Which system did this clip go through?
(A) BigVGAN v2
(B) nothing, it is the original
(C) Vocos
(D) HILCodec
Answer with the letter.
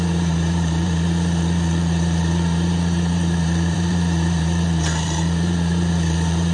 A